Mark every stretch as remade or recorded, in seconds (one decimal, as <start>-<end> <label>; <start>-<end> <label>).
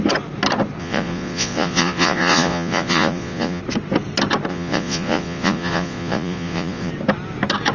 0.0-0.8 recorded; 0.8-3.6 remade; 3.6-4.5 recorded; 4.5-6.9 remade; 6.9-7.7 recorded